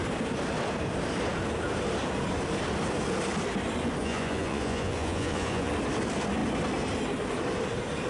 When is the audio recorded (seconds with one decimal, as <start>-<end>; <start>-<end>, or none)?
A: 0.0-4.0; 5.7-8.1